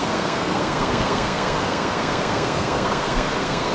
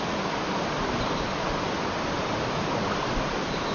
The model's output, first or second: first